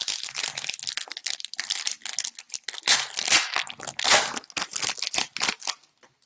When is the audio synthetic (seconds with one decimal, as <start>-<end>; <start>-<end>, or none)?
4.7-5.6